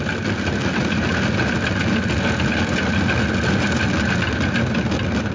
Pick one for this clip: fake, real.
real